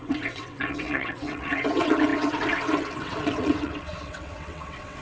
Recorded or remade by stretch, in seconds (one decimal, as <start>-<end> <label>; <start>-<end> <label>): 0.0-5.0 remade